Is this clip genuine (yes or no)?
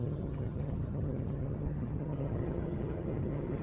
no